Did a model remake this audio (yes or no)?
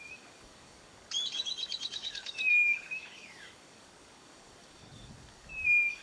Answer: yes